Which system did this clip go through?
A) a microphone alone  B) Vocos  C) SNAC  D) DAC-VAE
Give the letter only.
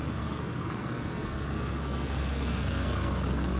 C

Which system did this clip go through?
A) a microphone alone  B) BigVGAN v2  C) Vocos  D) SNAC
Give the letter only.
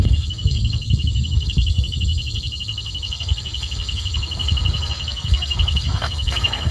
D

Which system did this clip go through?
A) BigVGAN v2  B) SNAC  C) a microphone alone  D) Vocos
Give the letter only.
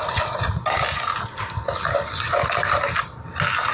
C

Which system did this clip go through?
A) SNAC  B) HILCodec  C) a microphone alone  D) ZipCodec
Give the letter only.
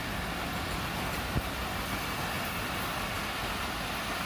C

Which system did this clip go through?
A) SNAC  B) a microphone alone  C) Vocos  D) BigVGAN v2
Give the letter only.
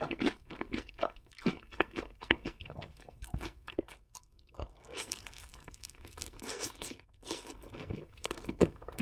A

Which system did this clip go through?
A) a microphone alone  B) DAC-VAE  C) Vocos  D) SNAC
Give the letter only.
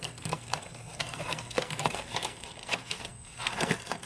D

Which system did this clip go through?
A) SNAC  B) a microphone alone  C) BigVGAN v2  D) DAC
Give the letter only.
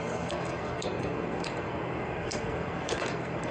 A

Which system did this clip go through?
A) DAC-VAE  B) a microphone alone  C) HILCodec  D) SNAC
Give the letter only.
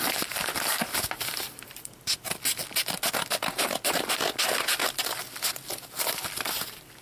B